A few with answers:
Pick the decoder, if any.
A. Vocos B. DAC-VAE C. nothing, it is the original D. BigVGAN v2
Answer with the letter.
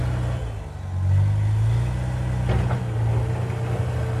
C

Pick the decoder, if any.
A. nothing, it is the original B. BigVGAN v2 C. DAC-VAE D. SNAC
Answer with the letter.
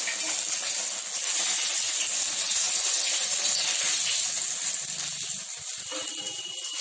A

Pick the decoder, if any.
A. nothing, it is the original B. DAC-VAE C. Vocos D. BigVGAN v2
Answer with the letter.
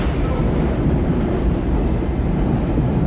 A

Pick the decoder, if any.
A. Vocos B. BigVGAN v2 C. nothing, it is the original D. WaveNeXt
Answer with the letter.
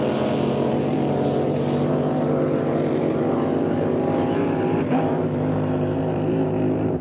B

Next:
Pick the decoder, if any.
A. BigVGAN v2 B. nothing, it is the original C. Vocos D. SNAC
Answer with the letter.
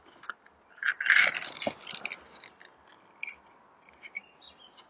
B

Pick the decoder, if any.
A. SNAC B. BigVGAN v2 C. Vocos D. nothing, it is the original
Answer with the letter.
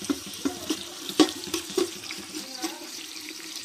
B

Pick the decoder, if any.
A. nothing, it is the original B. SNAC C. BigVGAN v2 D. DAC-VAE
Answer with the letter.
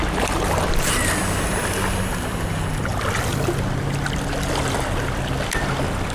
A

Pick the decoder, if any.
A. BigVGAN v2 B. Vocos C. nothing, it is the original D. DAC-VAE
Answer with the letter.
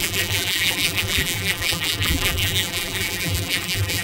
A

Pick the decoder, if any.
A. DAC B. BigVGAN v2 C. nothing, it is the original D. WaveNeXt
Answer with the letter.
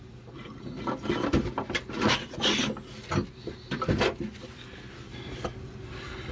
C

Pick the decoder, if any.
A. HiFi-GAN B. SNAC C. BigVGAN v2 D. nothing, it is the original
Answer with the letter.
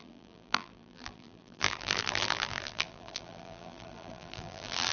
C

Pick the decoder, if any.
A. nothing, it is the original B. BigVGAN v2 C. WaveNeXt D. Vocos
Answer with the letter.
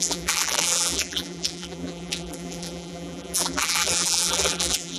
B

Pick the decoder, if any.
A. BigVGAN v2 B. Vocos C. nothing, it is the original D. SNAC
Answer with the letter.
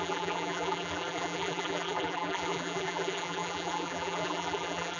A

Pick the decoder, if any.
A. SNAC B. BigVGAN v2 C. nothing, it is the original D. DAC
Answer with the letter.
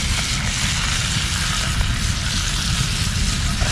C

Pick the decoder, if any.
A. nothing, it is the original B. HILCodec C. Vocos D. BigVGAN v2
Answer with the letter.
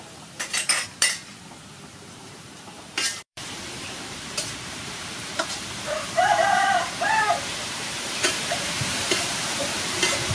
D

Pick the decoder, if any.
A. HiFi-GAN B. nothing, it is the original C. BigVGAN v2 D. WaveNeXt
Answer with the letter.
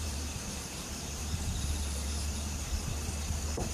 C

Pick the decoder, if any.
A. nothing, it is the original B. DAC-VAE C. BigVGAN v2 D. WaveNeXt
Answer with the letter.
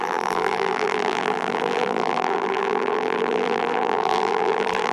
C